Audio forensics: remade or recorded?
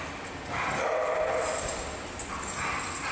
recorded